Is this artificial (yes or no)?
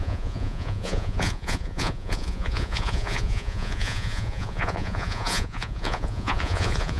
yes